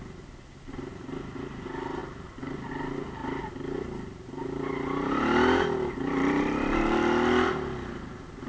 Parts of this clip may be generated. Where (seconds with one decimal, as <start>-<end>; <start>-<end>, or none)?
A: none